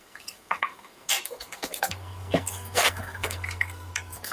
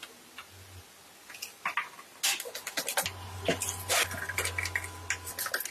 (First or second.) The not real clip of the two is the first